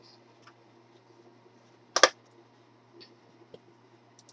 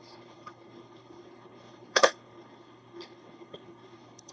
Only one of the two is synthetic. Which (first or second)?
second